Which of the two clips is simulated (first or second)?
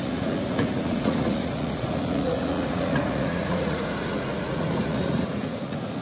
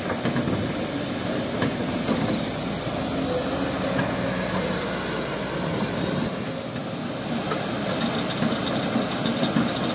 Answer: first